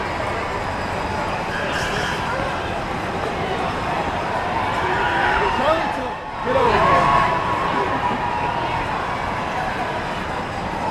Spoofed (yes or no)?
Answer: yes